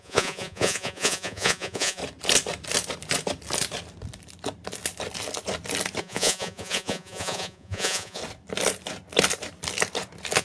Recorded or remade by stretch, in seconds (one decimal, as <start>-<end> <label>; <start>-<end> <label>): 0.0-2.0 remade; 2.0-6.0 recorded; 6.0-8.2 remade; 8.2-10.4 recorded